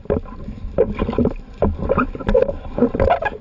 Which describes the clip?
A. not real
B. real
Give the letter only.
B